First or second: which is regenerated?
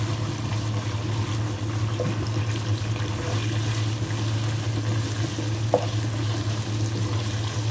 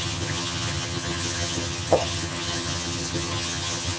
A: second